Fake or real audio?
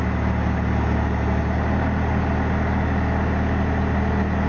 real